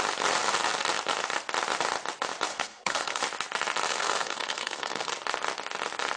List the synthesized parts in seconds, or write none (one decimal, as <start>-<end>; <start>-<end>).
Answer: 2.5-3.2; 3.9-5.1